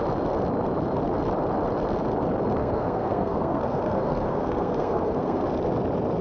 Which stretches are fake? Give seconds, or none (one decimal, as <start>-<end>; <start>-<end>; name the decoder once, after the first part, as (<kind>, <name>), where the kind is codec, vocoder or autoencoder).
2.6-5.4 (codec, SNAC)